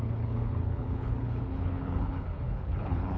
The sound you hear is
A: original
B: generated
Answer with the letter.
B